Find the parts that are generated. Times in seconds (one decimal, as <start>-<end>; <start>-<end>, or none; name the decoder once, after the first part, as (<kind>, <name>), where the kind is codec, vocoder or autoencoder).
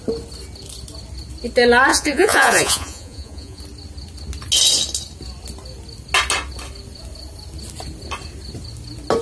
1.9-3.6 (vocoder, Vocos)